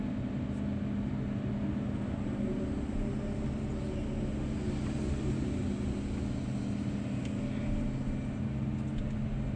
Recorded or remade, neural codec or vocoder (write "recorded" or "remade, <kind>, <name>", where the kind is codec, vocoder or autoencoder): recorded